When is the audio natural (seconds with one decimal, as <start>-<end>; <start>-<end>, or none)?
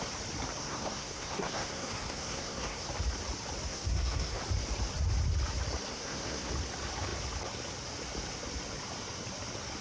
0.0-0.6; 2.9-3.7; 4.4-5.9; 6.5-9.8